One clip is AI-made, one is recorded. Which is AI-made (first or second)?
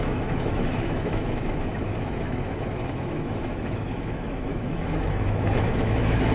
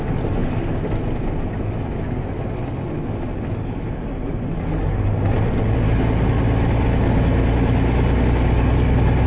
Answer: first